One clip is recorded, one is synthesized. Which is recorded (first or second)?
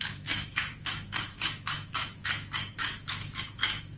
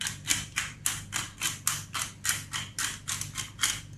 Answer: second